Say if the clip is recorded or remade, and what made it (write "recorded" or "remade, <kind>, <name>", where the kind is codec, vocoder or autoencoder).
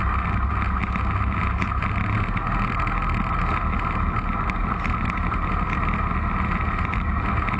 recorded